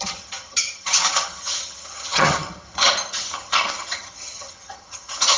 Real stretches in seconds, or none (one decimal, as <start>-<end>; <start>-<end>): none